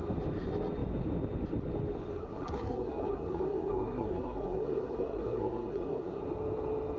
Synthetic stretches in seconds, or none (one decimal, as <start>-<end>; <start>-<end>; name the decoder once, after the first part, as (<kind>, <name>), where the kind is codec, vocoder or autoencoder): 2.2-6.2 (codec, SNAC)